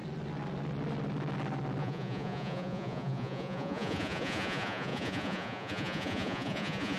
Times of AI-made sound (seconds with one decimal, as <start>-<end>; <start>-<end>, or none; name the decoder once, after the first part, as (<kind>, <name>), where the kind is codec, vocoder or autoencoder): 1.8-7.0 (vocoder, Vocos)